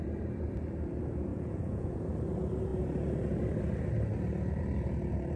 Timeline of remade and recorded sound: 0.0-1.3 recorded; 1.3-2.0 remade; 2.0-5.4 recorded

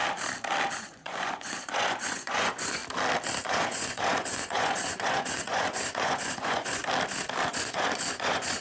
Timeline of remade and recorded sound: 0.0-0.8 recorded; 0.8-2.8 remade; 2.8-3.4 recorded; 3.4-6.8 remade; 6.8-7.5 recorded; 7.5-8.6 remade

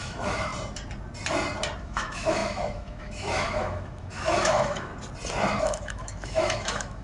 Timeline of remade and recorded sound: 0.0-0.5 remade; 0.5-1.8 recorded; 1.8-4.9 remade; 4.9-5.6 recorded; 5.6-7.0 remade

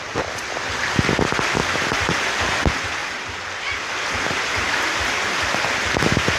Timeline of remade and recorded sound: 0.0-6.4 recorded

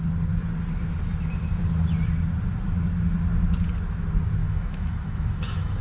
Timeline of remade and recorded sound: 0.0-4.4 recorded; 4.4-5.8 remade

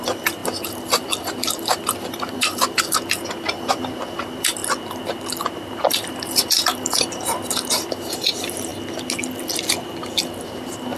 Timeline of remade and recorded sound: 0.0-4.6 remade; 4.6-5.5 recorded; 5.5-8.7 remade; 8.7-10.4 recorded; 10.4-11.0 remade

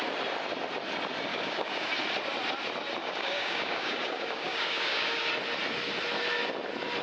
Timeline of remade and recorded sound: 0.0-1.3 recorded; 1.3-1.9 remade; 1.9-3.0 recorded; 3.0-5.2 remade; 5.2-7.0 recorded